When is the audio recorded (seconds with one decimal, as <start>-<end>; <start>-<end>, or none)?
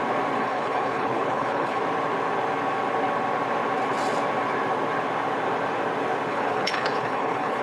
0.0-0.4; 1.8-6.3